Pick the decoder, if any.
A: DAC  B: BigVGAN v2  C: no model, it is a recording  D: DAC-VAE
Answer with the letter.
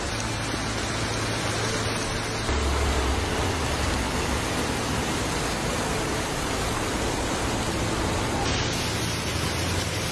C